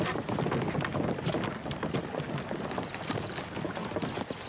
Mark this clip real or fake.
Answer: real